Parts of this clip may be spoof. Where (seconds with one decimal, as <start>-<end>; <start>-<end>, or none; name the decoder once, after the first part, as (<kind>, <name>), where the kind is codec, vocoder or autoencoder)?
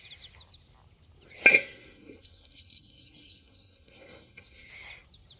1.5-4.7 (codec, SNAC)